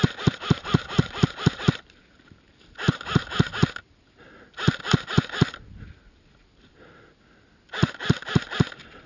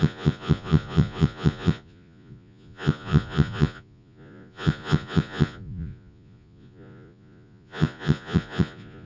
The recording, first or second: first